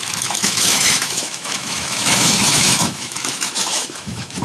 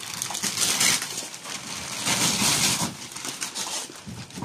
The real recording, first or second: second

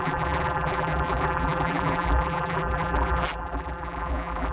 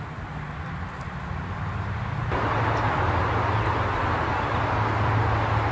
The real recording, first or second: second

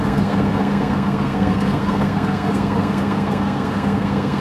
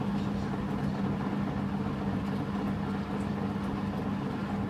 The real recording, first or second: second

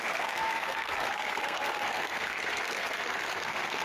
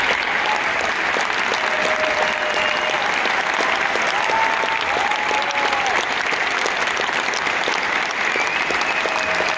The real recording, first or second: second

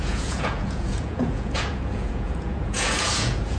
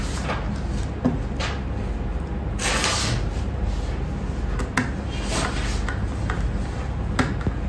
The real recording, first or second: second